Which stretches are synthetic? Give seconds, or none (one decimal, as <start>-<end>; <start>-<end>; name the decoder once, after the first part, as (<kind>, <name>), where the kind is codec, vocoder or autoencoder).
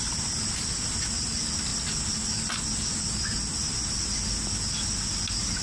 none